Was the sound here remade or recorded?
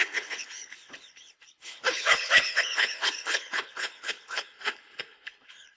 remade